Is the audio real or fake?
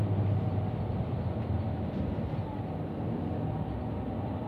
real